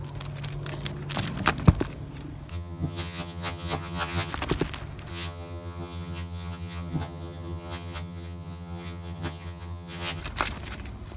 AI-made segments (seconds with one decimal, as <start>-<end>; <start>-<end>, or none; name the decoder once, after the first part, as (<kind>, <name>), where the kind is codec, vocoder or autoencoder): 2.5-4.3 (vocoder, HiFi-GAN); 5.1-10.2